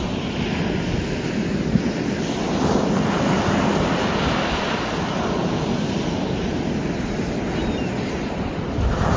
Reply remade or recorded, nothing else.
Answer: recorded